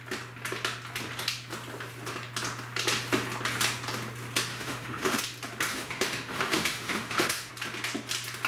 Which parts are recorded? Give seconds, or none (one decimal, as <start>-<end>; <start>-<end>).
0.0-4.5; 5.2-5.7; 7.5-8.5